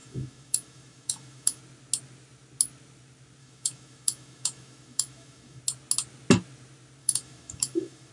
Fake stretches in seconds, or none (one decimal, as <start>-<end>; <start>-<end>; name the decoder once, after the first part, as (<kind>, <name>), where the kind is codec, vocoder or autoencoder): 0.0-1.6 (autoencoder, DAC-VAE); 3.4-5.6; 7.0-8.1